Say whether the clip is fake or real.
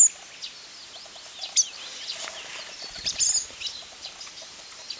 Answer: real